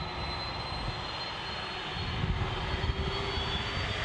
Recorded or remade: recorded